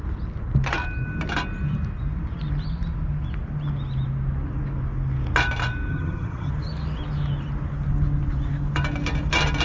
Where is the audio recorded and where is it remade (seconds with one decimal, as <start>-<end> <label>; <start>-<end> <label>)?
0.0-5.9 recorded; 5.9-6.5 remade; 6.5-9.6 recorded

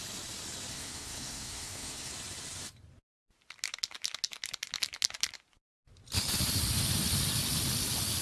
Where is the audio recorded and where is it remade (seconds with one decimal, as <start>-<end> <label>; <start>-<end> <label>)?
0.0-0.7 recorded; 0.7-2.1 remade; 2.1-8.2 recorded